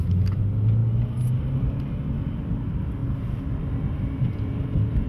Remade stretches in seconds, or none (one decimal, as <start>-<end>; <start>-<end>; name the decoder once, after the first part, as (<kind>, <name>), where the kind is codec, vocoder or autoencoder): none